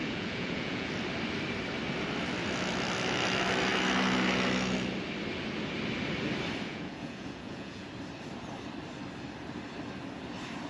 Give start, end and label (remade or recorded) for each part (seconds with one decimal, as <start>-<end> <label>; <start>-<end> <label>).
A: 0.0-0.9 remade; 0.9-6.7 recorded; 6.7-7.9 remade; 7.9-10.7 recorded